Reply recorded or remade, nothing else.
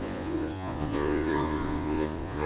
remade